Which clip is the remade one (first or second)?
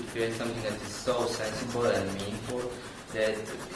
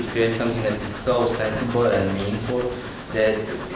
second